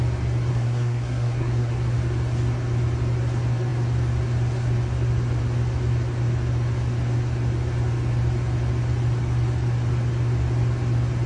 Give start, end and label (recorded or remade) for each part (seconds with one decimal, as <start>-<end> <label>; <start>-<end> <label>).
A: 0.0-0.5 recorded; 0.5-1.7 remade; 1.7-11.3 recorded